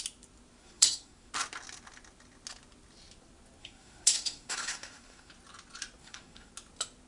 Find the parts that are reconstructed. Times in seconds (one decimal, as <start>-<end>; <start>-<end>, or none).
0.6-1.3; 3.6-5.3; 6.0-6.5